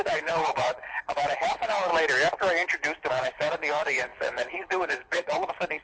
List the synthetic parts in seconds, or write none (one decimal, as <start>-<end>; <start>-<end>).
0.0-1.9; 3.1-5.8